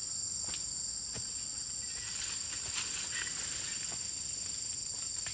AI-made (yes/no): no